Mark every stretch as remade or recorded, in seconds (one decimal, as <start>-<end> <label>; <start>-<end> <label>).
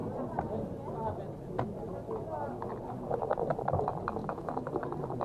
0.0-4.2 recorded; 4.2-4.7 remade; 4.7-5.2 recorded